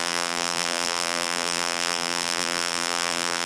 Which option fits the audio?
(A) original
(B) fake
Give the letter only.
B